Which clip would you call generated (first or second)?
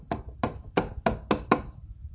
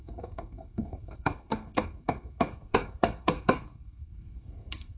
second